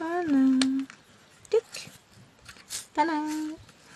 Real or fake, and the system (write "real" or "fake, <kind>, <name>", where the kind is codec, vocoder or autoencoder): real